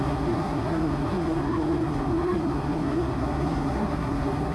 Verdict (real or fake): fake